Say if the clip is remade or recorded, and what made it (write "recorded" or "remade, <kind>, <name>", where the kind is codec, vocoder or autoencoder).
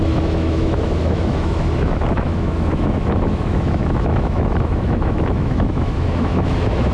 remade, autoencoder, DAC-VAE